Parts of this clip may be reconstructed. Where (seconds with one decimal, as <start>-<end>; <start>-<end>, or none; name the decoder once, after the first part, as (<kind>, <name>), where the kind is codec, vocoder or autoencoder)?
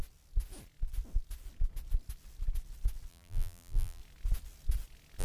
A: 3.1-4.0 (vocoder, BigVGAN v2)